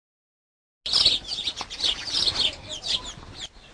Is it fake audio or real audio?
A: real